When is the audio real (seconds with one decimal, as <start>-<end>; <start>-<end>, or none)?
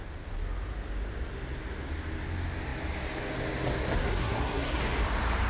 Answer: 0.0-4.0; 4.8-5.5